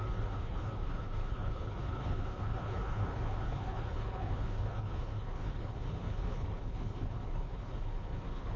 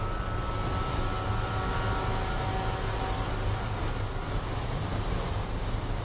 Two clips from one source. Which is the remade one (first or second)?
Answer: first